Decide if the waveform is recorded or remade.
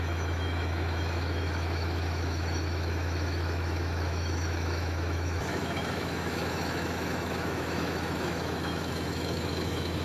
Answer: remade